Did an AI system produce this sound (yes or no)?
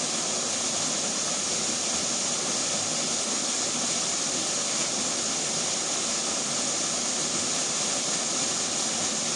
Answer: no